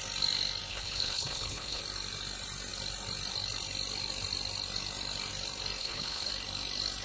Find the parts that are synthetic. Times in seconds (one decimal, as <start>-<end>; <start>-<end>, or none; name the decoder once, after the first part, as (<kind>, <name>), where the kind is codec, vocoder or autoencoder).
0.7-1.8 (codec, HILCodec); 5.8-6.3